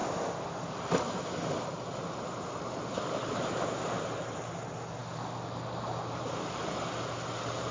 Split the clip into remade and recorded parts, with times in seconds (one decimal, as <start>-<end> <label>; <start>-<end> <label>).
0.0-7.7 recorded